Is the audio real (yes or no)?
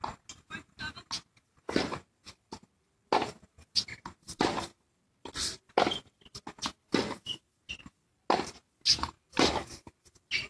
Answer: yes